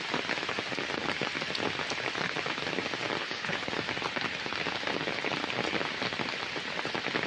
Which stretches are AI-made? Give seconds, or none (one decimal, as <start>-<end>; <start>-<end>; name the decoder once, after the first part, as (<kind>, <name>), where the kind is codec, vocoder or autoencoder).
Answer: 3.2-3.7 (codec, HILCodec)